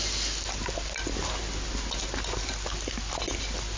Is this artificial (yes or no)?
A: no